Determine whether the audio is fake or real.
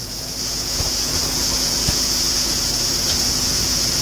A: fake